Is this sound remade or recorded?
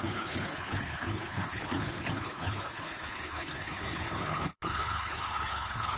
remade